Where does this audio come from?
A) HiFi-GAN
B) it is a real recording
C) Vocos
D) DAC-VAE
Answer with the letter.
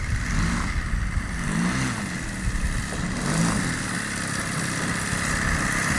B